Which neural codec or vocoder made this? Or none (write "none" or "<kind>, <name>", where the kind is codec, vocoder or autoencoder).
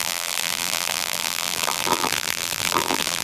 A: vocoder, BigVGAN v2